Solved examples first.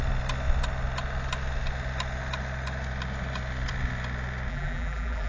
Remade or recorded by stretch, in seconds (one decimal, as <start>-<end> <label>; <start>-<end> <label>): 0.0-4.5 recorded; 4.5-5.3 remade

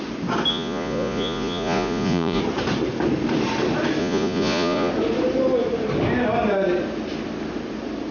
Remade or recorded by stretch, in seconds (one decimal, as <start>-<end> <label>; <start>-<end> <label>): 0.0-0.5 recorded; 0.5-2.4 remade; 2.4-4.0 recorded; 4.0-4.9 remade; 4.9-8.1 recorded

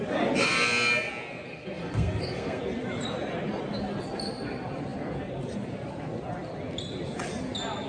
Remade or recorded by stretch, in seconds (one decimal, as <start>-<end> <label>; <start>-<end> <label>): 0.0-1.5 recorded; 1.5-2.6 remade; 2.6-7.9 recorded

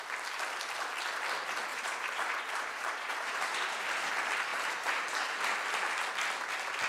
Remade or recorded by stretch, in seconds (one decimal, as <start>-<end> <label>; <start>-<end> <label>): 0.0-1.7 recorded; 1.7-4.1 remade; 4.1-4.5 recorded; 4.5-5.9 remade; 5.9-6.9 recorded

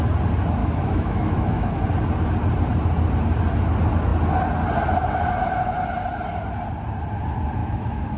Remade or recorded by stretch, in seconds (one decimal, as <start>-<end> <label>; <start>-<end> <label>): 0.0-0.6 recorded; 0.6-1.7 remade; 1.7-7.6 recorded; 7.6-8.2 remade

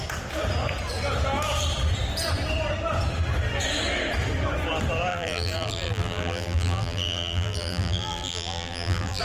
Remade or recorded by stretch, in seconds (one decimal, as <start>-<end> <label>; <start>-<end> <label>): 0.0-5.1 recorded; 5.1-9.2 remade

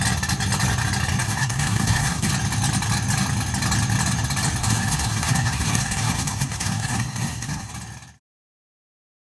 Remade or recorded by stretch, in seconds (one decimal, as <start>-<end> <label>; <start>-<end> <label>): 0.0-1.2 recorded; 1.2-2.3 remade; 2.3-4.6 recorded; 4.6-7.7 remade; 7.7-9.3 recorded

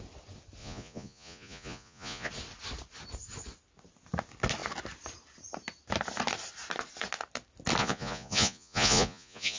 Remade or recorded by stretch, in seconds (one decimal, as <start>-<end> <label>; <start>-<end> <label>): 0.0-0.6 recorded; 0.6-2.3 remade; 2.3-7.8 recorded; 7.8-9.6 remade